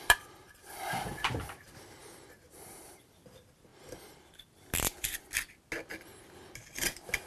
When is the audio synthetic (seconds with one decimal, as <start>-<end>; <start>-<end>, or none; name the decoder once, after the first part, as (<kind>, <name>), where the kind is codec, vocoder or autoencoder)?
0.0-2.0 (vocoder, BigVGAN v2); 2.9-3.7; 6.2-7.3